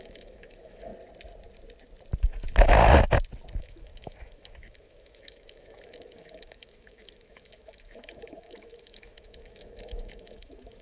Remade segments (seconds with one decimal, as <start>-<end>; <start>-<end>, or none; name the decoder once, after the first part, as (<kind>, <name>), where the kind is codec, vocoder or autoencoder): 0.0-0.9 (autoencoder, DAC-VAE); 3.6-10.8